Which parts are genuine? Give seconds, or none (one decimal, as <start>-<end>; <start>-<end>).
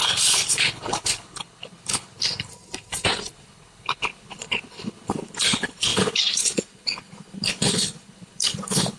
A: 2.5-3.3